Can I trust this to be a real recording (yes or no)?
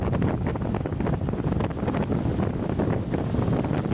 yes